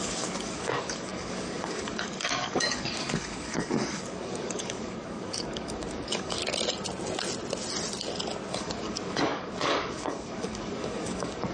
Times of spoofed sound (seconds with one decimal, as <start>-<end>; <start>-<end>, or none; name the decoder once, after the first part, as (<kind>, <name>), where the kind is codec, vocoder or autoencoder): 0.0-6.4 (codec, DAC); 8.5-11.5